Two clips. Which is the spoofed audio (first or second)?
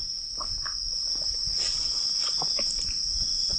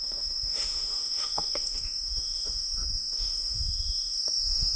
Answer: second